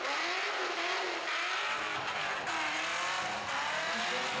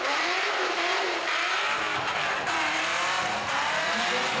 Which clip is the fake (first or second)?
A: second